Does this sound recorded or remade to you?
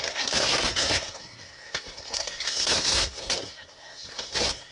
remade